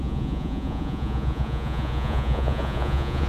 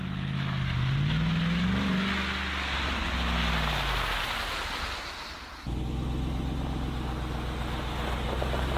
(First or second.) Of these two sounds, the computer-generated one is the first